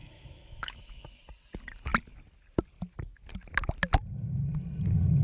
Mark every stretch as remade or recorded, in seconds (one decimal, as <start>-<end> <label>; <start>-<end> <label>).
0.0-1.2 remade; 1.2-5.2 recorded